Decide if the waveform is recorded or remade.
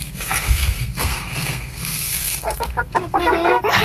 remade